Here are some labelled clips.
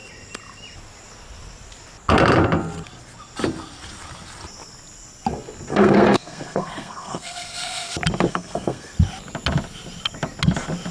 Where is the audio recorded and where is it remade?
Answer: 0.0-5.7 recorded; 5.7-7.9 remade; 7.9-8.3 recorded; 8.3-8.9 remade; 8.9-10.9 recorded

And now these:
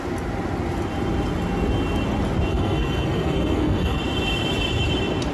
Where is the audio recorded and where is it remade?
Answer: 0.0-2.5 recorded; 2.5-4.0 remade; 4.0-5.3 recorded

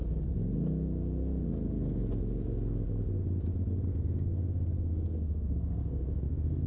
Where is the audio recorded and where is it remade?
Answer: 0.0-4.0 recorded; 4.0-6.7 remade